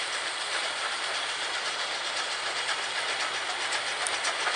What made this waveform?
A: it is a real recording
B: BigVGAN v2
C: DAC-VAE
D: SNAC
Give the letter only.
A